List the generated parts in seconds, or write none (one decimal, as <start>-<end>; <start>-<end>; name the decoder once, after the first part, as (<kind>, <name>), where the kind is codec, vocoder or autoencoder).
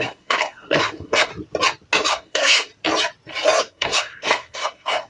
0.0-1.3 (codec, SNAC); 2.1-2.7; 3.6-5.1